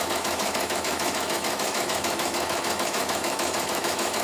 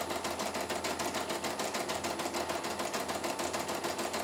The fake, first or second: first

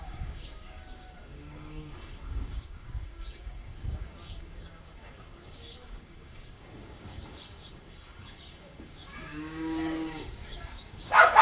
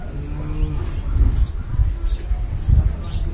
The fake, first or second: first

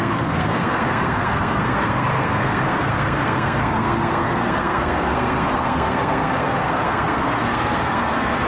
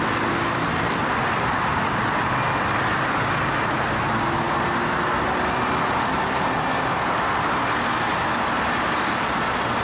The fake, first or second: first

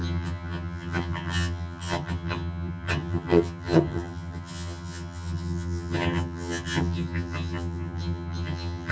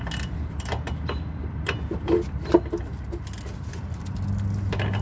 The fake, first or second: first